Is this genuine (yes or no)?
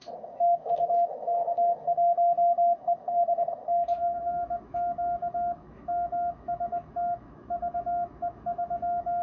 no